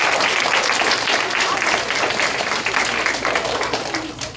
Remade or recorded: recorded